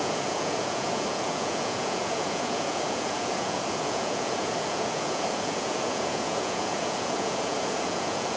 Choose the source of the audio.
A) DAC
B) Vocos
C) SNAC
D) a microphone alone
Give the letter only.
B